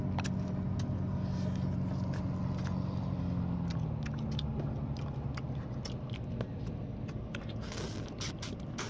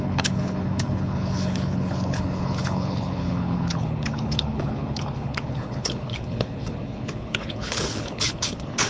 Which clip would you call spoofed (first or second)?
second